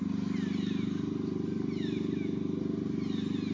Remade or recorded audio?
recorded